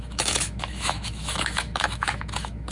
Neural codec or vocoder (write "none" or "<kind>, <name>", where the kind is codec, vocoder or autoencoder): autoencoder, DAC-VAE